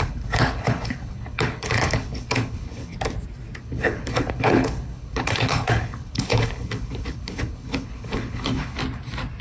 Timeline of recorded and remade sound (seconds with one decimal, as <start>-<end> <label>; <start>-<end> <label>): 0.0-2.9 remade; 2.9-3.6 recorded; 3.6-8.8 remade; 8.8-9.4 recorded